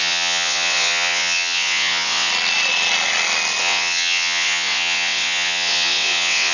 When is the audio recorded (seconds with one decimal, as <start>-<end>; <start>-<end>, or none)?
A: 2.3-3.6